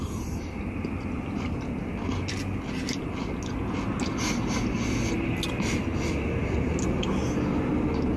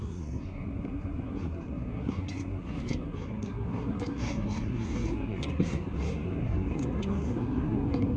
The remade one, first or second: second